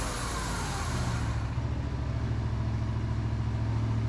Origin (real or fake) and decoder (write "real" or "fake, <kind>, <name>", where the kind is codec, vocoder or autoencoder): real